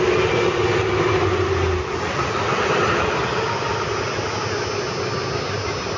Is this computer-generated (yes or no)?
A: no